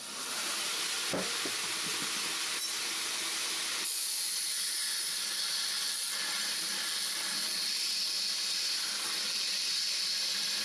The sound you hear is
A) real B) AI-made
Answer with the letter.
A